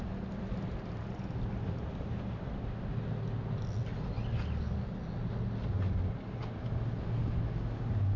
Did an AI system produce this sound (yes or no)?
no